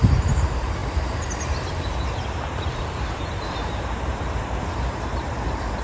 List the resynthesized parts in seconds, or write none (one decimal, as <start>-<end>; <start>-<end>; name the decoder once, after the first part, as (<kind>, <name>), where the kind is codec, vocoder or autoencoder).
0.0-5.8 (vocoder, BigVGAN v2)